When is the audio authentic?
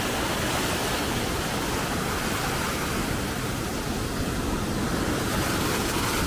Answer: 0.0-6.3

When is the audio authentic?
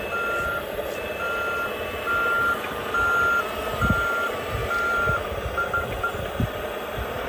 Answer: 0.0-7.3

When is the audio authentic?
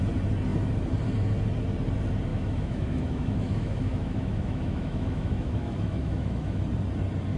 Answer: 0.0-2.3; 6.6-7.4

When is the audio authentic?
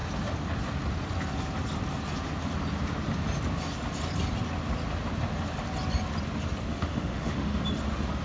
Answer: 0.0-6.7; 7.6-8.2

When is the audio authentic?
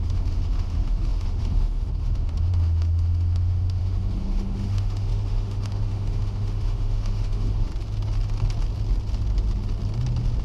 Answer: 7.7-10.4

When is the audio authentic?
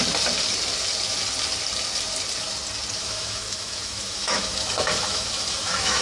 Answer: 0.0-3.0